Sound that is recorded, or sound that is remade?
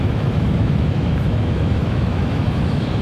remade